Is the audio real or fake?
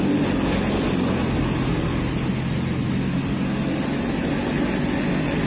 real